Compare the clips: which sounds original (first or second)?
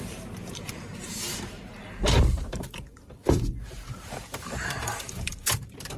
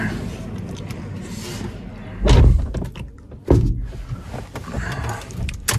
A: second